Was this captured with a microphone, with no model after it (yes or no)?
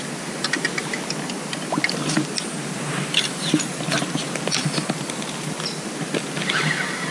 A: yes